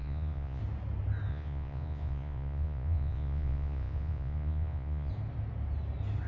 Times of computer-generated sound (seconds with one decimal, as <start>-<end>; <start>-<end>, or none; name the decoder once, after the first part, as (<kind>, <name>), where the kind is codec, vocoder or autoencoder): 0.0-0.6 (vocoder, Vocos); 1.3-5.1